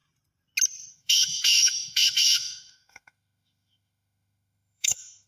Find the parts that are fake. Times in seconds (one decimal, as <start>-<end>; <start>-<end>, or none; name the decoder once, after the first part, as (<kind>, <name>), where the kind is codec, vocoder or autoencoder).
0.9-5.3 (autoencoder, DAC-VAE)